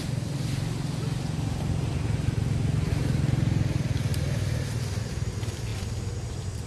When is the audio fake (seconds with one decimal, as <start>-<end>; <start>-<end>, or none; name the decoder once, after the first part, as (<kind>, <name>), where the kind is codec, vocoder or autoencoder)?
none